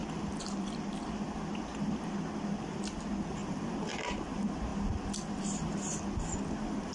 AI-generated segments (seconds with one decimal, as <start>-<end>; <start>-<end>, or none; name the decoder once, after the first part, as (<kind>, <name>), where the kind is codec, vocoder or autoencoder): 0.0-2.6 (vocoder, BigVGAN v2); 3.4-3.9; 4.7-6.9